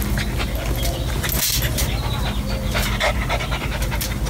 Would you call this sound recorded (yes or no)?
yes